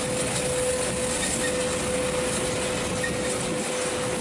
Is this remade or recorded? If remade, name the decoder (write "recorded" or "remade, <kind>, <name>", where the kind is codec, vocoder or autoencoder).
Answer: recorded